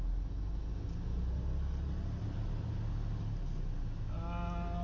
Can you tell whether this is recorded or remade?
recorded